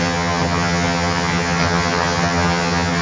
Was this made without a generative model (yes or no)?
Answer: no